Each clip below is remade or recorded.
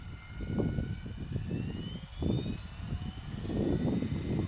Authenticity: recorded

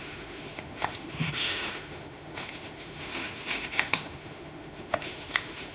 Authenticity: remade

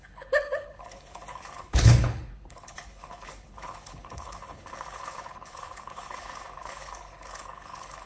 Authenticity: remade